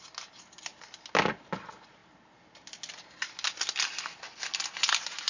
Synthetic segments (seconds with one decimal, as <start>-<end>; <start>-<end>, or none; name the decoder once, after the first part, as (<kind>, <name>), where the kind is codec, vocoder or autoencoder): none